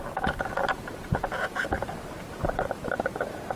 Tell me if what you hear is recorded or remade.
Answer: recorded